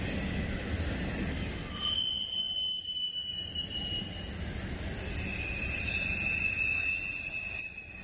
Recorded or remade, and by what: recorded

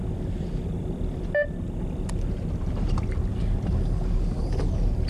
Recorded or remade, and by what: recorded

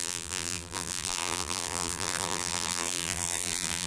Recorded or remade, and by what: remade, vocoder, BigVGAN v2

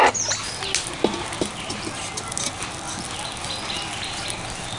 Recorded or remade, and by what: recorded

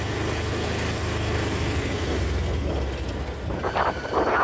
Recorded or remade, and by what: recorded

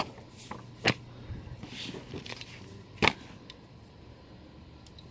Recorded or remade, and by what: recorded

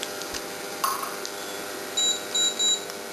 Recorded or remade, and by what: recorded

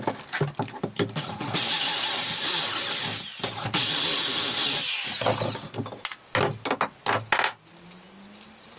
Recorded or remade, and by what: recorded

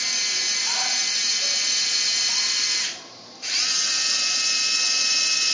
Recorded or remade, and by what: remade, vocoder, BigVGAN v2